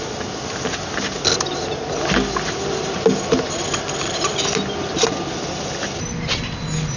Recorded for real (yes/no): yes